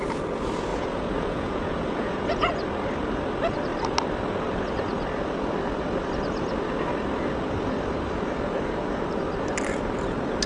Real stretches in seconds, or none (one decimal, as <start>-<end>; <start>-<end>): 0.0-0.7; 2.5-10.5